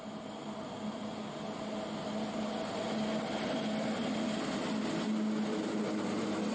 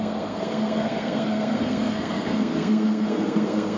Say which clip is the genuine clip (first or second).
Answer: first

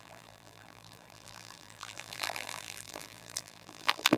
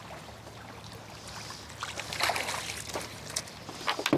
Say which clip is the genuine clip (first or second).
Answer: second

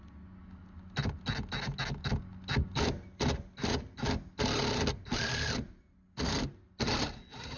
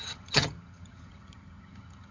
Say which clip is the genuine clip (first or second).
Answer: first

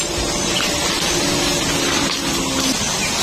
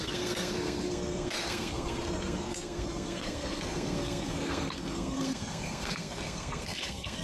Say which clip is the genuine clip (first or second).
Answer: first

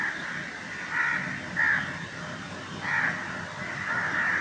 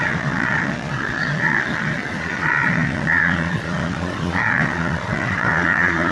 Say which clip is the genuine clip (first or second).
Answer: first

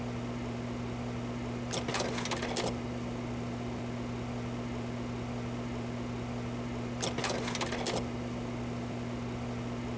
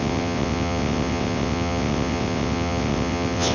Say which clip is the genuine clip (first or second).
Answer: first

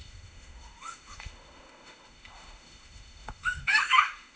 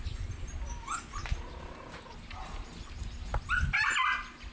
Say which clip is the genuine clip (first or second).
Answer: second